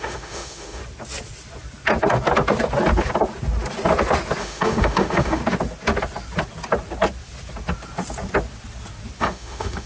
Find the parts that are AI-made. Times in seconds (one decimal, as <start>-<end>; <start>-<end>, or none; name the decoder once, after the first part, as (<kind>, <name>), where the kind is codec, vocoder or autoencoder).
0.0-0.8 (autoencoder, DAC-VAE); 4.4-5.4; 9.2-9.9